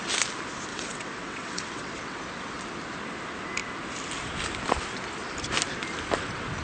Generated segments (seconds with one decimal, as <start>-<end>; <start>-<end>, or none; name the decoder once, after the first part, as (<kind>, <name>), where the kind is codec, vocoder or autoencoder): 0.7-2.2 (vocoder, WaveNeXt)